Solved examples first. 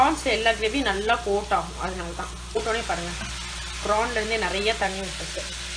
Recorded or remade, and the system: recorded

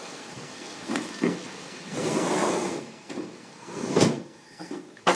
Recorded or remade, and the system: remade, codec, SNAC